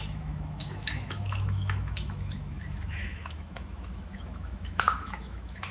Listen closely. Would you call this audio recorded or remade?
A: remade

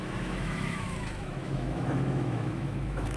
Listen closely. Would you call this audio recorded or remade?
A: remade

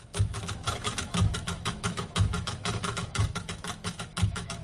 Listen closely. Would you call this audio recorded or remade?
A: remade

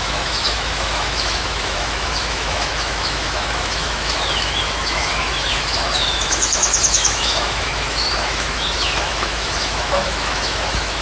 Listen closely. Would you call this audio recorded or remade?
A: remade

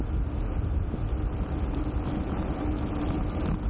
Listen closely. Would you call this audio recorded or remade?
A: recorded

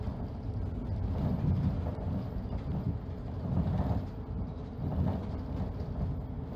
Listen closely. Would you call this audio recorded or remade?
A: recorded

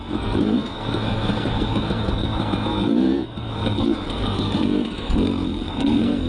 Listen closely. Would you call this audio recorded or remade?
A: remade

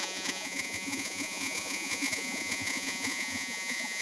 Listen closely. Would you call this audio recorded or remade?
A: remade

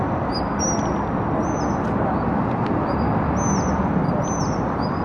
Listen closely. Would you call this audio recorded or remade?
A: recorded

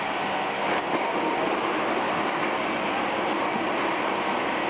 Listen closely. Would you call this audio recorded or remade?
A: recorded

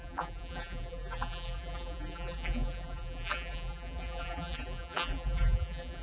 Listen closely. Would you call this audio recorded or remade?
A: remade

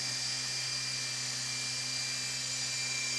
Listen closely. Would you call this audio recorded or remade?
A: recorded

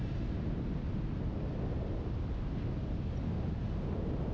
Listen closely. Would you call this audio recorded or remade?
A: recorded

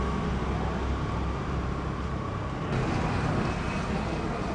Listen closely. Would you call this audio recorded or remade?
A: recorded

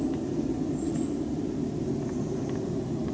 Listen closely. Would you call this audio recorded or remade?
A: recorded